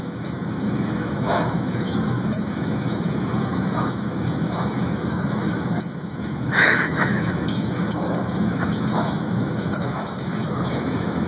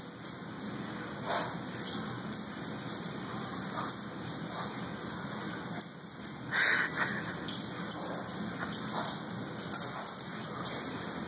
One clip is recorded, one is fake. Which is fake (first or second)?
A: first